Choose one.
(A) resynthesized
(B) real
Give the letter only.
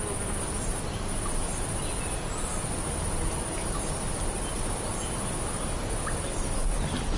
B